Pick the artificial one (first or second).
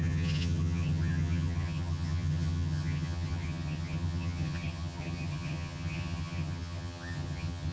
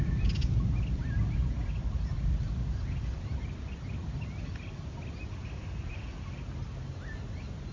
first